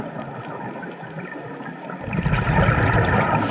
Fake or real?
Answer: real